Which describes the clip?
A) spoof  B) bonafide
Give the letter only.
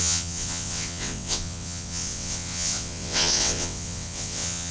A